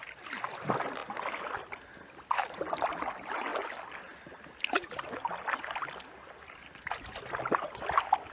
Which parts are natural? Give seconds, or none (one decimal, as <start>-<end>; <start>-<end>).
0.0-8.3